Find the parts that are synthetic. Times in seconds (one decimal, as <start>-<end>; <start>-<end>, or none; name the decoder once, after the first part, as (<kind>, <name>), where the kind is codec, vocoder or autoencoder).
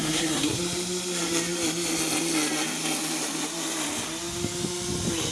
0.0-0.6 (codec, SNAC)